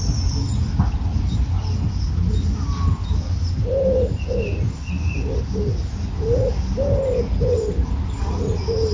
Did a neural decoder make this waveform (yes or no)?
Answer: no